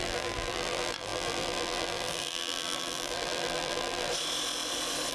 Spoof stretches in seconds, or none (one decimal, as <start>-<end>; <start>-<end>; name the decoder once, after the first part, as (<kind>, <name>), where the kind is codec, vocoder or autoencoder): 0.0-4.1 (vocoder, BigVGAN v2)